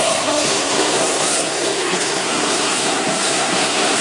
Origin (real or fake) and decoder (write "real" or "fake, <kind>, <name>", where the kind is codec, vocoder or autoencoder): fake, codec, SNAC